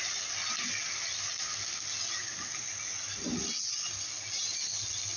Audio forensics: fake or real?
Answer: real